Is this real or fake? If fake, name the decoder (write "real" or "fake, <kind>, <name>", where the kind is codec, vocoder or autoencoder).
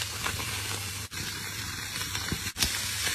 fake, vocoder, BigVGAN v2